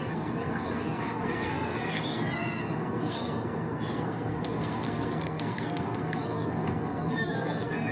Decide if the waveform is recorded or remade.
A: remade